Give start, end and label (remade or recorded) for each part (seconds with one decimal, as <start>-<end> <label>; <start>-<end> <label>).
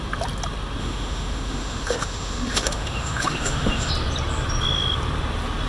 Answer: 0.0-0.8 recorded; 0.8-3.9 remade; 3.9-5.7 recorded